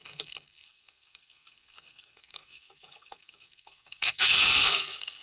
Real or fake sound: fake